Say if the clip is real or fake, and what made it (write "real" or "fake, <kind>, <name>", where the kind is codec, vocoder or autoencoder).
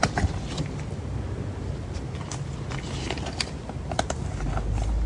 real